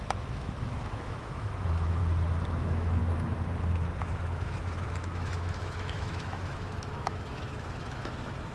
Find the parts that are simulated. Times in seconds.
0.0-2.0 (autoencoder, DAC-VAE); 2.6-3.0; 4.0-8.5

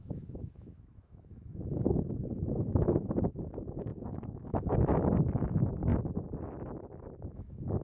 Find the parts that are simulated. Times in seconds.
0.0-5.9 (autoencoder, DAC-VAE); 7.2-7.8

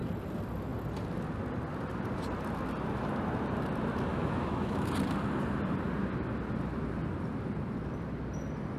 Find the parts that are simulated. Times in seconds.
4.1-4.9 (autoencoder, DAC-VAE)

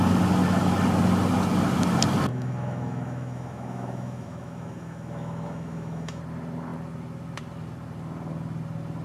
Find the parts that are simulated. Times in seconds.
2.3-6.2 (autoencoder, DAC-VAE)

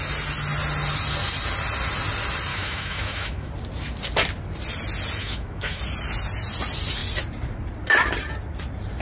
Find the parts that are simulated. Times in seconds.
2.5-3.5 (autoencoder, DAC-VAE); 5.2-5.8